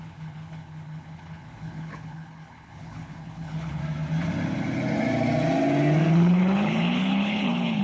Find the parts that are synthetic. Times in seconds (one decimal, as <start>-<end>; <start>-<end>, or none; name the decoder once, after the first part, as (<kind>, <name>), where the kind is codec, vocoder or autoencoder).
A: 0.0-3.8 (codec, HILCodec); 6.1-7.8